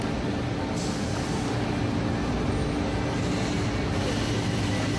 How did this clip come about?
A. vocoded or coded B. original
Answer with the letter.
B